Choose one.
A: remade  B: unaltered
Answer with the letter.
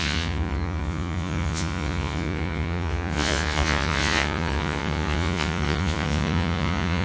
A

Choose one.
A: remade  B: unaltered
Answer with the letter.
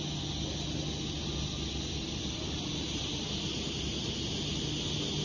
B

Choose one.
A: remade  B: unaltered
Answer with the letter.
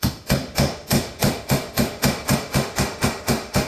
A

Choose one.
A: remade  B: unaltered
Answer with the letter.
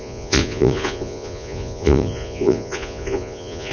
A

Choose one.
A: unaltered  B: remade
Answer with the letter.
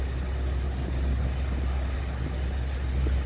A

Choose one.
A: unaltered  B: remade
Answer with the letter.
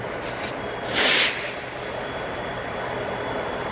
A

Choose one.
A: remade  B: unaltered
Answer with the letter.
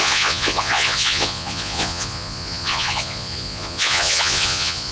A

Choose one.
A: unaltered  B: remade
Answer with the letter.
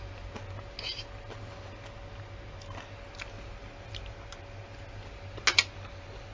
A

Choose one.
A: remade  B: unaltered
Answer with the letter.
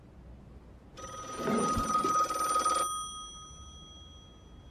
B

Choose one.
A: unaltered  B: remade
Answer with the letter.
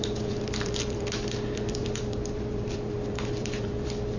B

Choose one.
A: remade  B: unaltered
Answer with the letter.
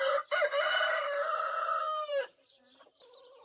A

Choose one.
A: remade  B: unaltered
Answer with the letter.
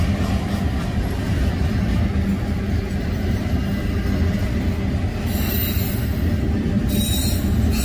B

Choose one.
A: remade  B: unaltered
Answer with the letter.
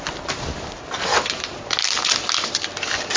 B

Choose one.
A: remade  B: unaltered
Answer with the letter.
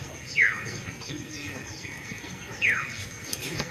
A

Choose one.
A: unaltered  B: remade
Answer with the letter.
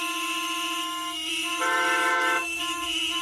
B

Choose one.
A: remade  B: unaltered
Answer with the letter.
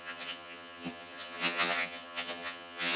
A